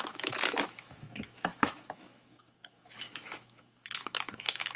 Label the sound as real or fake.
fake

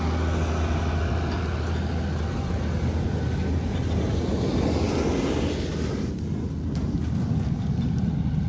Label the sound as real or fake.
real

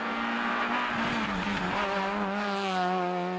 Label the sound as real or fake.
real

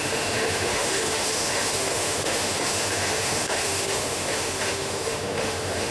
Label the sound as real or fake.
fake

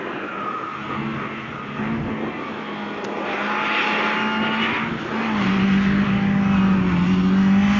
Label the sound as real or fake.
real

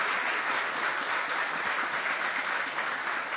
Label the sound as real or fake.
real